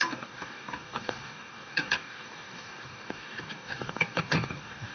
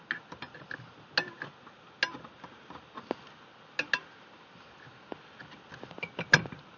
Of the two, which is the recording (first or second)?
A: second